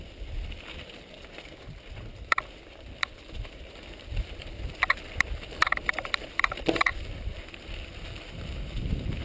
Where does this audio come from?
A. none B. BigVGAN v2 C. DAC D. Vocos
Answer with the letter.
B